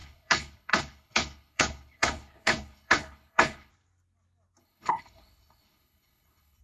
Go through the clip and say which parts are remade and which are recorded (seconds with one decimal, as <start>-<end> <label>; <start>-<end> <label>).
0.0-3.7 remade; 3.7-4.6 recorded; 4.6-6.6 remade